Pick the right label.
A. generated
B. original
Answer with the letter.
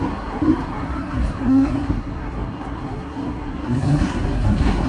A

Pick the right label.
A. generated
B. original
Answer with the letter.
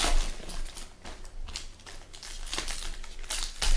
B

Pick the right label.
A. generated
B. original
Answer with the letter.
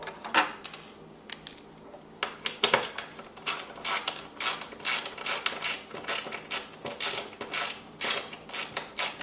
B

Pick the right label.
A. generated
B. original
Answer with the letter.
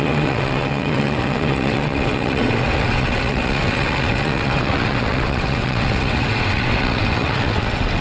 A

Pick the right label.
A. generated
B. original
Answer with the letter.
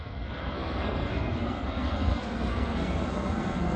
A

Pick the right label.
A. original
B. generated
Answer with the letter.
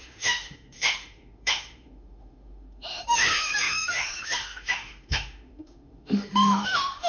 B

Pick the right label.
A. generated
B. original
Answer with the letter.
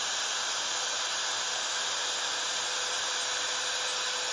B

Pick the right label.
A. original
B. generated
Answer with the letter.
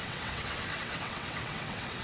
B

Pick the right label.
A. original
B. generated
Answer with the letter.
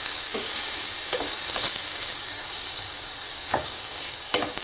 B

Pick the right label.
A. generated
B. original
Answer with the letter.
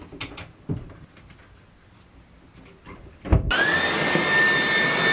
B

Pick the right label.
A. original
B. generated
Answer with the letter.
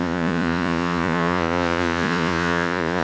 B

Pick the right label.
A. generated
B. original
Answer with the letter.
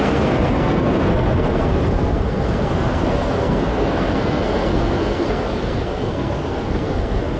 A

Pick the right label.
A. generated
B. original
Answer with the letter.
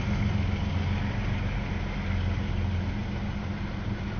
B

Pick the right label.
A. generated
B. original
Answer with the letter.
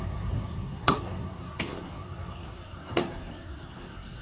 A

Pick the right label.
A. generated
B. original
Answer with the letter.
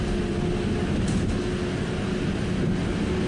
B